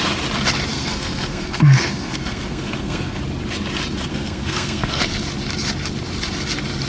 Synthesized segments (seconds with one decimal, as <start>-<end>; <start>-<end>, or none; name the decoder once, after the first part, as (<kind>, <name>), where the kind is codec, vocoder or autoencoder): 0.7-3.2 (codec, SNAC); 4.1-5.0